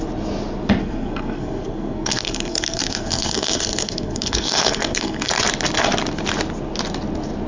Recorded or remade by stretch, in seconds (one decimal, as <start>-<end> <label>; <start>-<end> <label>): 0.0-0.8 recorded; 0.8-5.3 remade; 5.3-7.5 recorded